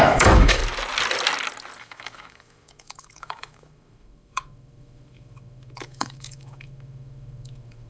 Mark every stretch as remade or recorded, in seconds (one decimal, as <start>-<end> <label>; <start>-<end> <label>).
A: 0.0-0.6 remade; 0.6-1.8 recorded; 1.8-7.9 remade